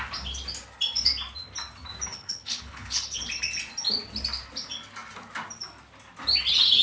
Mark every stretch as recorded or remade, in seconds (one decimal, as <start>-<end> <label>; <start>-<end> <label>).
0.0-2.1 recorded; 2.1-3.2 remade; 3.2-6.8 recorded